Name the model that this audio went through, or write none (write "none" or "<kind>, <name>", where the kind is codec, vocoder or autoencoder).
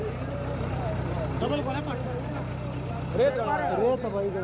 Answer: none